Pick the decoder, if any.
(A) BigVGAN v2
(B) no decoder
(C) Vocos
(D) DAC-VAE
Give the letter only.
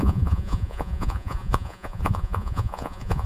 C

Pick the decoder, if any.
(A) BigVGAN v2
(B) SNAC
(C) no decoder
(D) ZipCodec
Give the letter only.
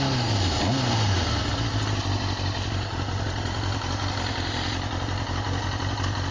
C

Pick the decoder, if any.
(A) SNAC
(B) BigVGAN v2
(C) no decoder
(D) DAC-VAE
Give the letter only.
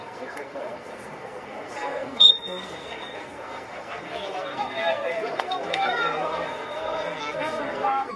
A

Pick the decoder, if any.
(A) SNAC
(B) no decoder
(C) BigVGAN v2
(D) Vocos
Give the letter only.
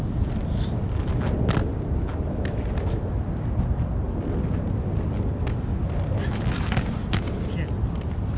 B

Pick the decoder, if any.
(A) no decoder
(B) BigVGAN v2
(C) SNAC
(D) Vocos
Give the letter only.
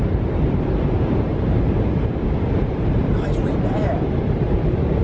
B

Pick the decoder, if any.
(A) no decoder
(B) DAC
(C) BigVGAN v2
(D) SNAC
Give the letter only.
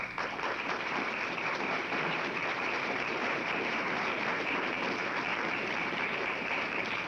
C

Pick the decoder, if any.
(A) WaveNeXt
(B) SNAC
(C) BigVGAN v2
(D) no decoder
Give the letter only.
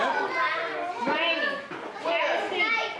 D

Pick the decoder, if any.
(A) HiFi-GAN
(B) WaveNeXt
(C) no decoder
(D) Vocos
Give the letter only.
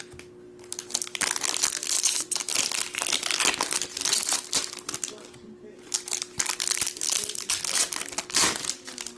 C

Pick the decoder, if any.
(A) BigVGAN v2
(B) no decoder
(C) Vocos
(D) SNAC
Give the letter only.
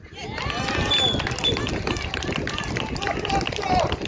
B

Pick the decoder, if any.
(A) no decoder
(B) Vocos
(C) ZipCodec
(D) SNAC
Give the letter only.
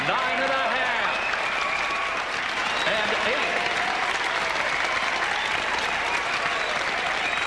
A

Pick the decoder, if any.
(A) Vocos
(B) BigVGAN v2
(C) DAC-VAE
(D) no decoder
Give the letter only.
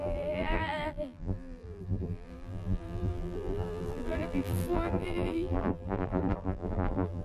B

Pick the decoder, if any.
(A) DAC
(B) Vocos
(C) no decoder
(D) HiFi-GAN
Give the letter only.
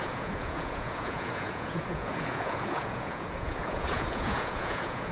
B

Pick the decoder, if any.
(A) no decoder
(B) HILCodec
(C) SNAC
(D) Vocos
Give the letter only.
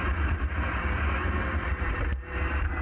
A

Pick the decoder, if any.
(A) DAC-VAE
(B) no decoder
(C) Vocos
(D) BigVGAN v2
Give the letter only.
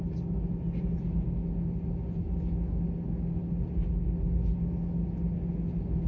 B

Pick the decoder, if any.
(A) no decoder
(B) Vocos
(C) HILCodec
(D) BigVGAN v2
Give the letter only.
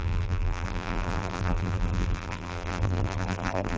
D